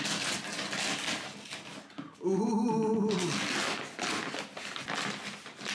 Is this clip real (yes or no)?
yes